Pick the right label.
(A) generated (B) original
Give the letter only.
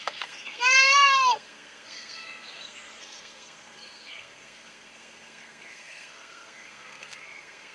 A